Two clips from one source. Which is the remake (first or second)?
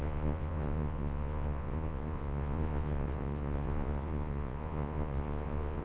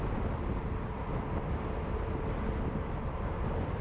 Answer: first